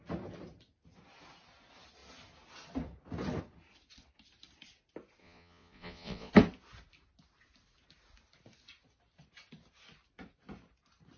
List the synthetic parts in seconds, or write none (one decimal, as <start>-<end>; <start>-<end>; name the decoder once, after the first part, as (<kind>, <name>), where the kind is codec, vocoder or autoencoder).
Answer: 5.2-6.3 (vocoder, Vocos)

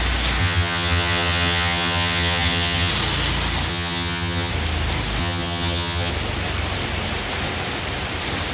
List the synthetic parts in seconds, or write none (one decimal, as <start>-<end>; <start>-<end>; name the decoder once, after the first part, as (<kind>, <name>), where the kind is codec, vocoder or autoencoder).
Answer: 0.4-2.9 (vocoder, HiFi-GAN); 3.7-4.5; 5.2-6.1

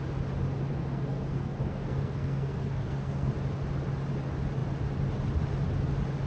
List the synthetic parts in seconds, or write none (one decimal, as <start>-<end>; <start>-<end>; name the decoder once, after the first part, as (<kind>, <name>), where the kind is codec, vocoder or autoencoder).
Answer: 0.7-3.3 (codec, SNAC)